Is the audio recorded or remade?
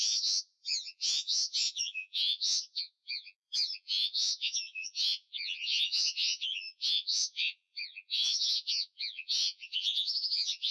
remade